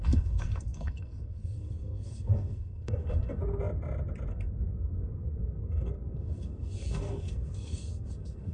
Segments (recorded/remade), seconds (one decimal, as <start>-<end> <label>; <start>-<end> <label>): 0.0-3.4 remade; 3.4-4.3 recorded; 4.3-8.5 remade